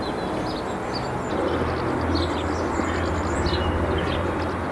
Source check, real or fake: real